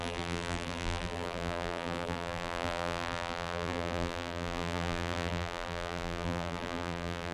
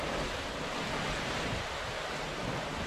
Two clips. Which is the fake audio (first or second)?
first